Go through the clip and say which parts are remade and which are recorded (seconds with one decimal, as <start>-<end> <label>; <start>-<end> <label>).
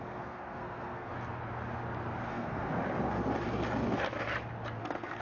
0.0-1.1 remade; 1.1-2.3 recorded; 2.3-2.7 remade; 2.7-4.8 recorded; 4.8-5.2 remade